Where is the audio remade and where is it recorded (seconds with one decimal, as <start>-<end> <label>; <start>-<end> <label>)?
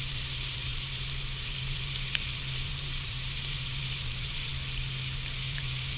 0.0-4.5 remade; 4.5-5.4 recorded; 5.4-6.0 remade